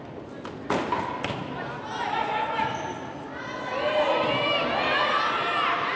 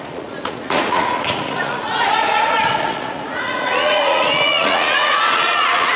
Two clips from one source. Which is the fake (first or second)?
second